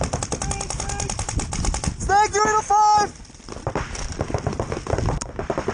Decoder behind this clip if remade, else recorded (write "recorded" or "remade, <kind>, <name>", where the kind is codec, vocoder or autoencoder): recorded